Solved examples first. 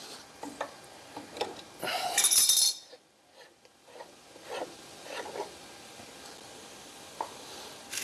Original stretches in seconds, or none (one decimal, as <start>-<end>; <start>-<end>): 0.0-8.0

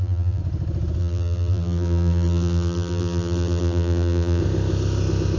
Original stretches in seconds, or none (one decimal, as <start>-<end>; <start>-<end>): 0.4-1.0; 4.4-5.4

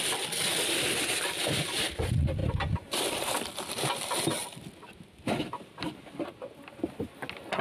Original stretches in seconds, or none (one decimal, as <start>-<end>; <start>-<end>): 0.0-2.4; 3.3-7.6